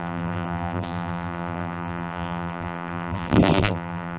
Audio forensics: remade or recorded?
remade